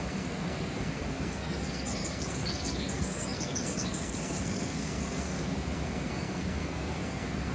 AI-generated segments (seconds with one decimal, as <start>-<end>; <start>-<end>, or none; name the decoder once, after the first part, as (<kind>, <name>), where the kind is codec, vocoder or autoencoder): 0.0-7.5 (codec, SNAC)